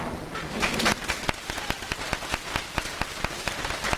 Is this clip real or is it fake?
fake